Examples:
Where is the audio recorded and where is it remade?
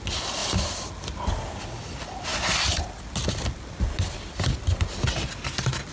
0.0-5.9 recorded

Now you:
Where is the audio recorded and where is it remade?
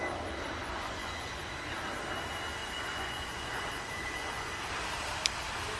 0.0-0.6 recorded; 0.6-1.4 remade; 1.4-2.6 recorded; 2.6-4.5 remade; 4.5-5.8 recorded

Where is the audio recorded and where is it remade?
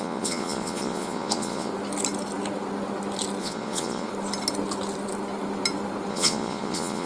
0.0-1.7 remade; 1.7-3.4 recorded; 3.4-4.1 remade; 4.1-6.1 recorded; 6.1-7.1 remade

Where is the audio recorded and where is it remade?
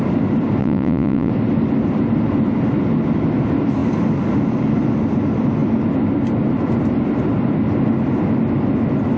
0.0-0.6 recorded; 0.6-1.3 remade; 1.3-9.2 recorded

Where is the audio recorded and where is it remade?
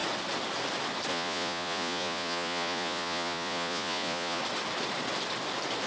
0.0-1.1 recorded; 1.1-4.4 remade; 4.4-5.9 recorded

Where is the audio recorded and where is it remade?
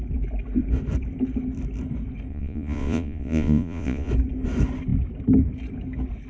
0.0-2.3 recorded; 2.3-4.1 remade; 4.1-6.3 recorded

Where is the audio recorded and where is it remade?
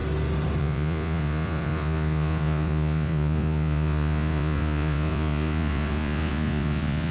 0.0-0.6 recorded; 0.6-7.1 remade